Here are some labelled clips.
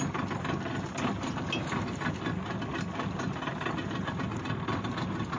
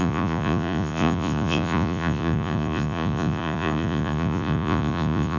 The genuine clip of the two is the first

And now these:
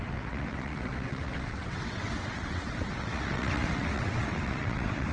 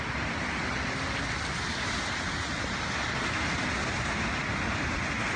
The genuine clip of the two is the second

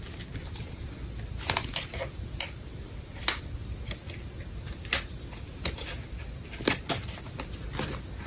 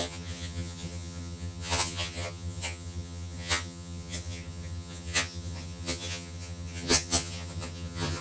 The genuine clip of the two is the first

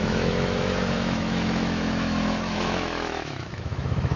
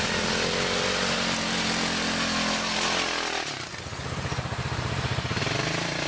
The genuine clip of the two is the second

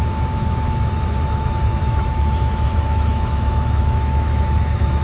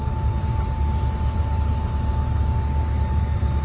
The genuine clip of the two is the second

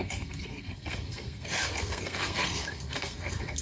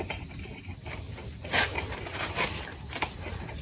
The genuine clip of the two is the second